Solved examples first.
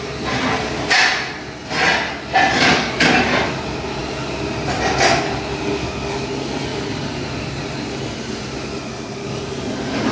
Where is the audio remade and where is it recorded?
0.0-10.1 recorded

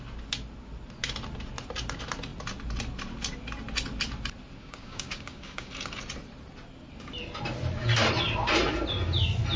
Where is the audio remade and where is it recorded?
0.0-4.6 recorded; 4.6-5.7 remade; 5.7-9.6 recorded

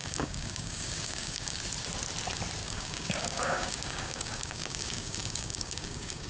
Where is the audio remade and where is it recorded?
0.0-1.6 remade; 1.6-2.6 recorded; 2.6-6.3 remade

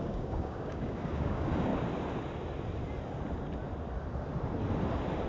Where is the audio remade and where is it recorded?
0.0-1.7 remade; 1.7-5.3 recorded